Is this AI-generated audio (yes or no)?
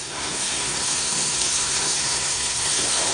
yes